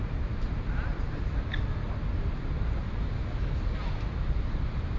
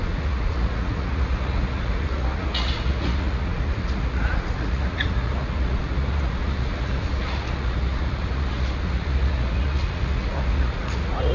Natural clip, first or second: first